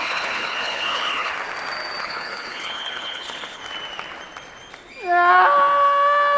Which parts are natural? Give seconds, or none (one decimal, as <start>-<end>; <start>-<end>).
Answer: 1.3-2.0; 3.6-6.4